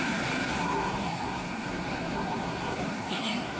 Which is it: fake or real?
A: fake